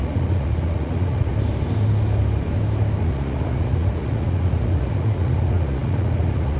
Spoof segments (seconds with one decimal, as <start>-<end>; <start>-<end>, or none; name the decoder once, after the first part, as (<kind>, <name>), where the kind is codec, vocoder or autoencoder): 0.0-1.3 (vocoder, Vocos); 3.0-6.6